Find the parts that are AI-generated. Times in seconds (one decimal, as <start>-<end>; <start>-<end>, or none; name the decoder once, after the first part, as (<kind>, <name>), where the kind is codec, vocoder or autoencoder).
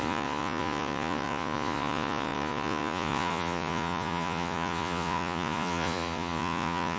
0.0-7.0 (vocoder, Vocos)